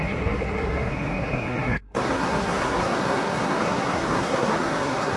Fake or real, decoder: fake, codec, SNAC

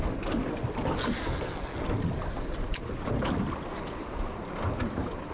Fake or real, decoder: real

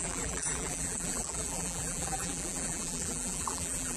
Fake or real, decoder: fake, vocoder, BigVGAN v2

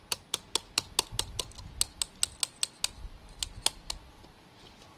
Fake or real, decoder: real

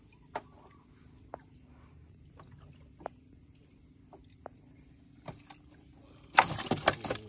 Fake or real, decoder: real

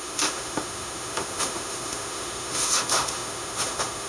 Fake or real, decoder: fake, autoencoder, DAC-VAE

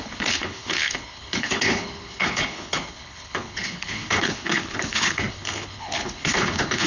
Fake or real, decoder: fake, codec, HILCodec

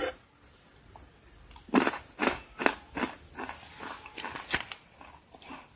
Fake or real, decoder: real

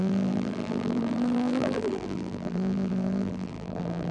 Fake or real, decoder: fake, vocoder, BigVGAN v2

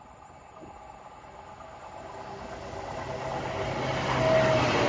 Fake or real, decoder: real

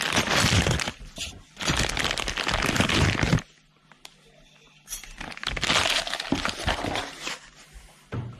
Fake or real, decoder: real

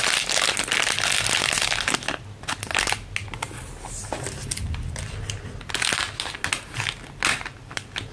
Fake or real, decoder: real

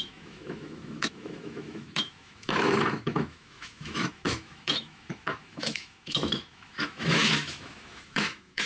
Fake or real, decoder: fake, autoencoder, DAC-VAE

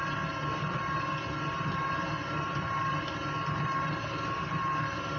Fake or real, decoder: real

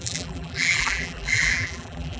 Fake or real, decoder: fake, vocoder, BigVGAN v2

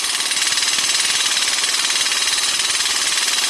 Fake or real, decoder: real